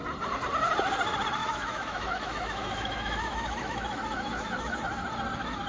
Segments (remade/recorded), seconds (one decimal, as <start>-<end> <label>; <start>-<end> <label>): 0.0-1.4 recorded; 1.4-4.8 remade; 4.8-5.7 recorded